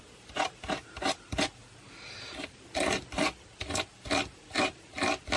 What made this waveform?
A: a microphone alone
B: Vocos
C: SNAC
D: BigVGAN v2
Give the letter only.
A